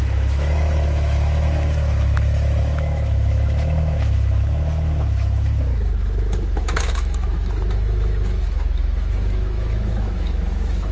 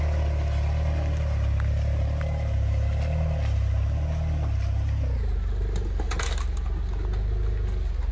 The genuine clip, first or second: second